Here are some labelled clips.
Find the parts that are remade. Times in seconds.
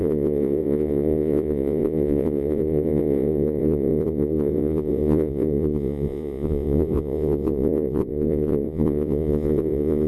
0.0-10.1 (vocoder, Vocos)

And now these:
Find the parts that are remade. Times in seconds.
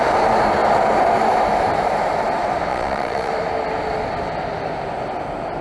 2.7-3.3 (vocoder, Vocos)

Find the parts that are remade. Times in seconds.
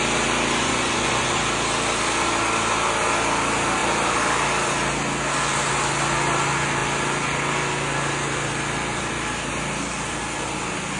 0.6-1.4 (vocoder, Vocos)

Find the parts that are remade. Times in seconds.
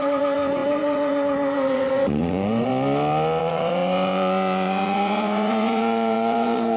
0.0-2.7 (vocoder, Vocos); 3.4-6.8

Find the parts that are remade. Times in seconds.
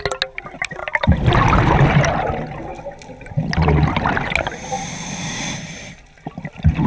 none